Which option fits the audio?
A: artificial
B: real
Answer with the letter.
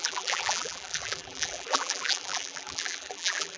A